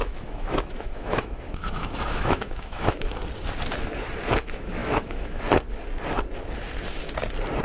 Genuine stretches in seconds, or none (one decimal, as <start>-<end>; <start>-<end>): 3.2-4.8; 5.4-7.6